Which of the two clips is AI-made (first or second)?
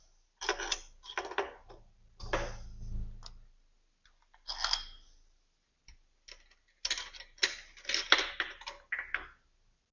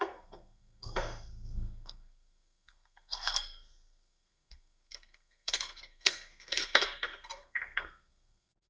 second